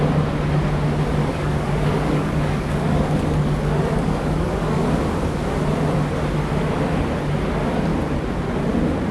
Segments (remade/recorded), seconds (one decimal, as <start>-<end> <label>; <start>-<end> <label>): 0.0-1.2 recorded; 1.2-4.9 remade; 4.9-9.1 recorded

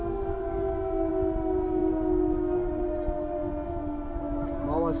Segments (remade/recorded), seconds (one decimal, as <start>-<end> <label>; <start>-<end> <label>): 0.0-0.4 recorded; 0.4-1.1 remade; 1.1-5.0 recorded

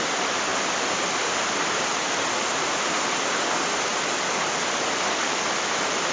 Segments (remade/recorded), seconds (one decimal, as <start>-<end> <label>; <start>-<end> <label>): 0.0-6.1 recorded

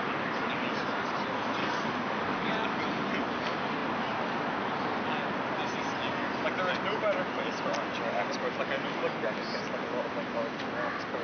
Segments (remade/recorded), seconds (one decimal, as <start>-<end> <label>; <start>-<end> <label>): 0.0-1.6 recorded; 1.6-2.5 remade; 2.5-11.2 recorded

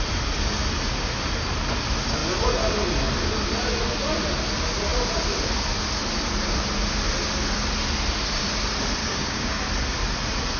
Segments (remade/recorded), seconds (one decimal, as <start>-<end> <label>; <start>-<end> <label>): 0.0-9.0 recorded; 9.0-9.6 remade; 9.6-10.6 recorded

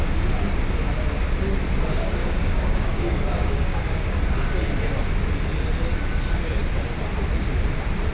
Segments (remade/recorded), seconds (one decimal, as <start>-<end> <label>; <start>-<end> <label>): 0.0-2.2 recorded; 2.2-4.2 remade; 4.2-8.1 recorded